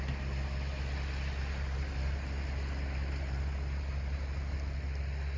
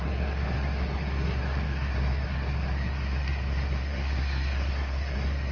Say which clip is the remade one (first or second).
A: second